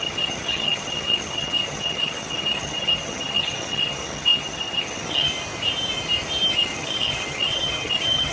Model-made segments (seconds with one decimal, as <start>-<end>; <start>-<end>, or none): 0.0-5.3; 6.5-8.3